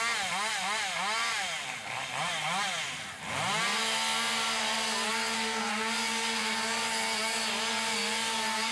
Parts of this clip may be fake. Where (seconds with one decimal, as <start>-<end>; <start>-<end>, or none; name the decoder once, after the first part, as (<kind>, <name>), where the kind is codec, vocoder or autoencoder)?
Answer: none